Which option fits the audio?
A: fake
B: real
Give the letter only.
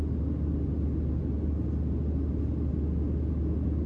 B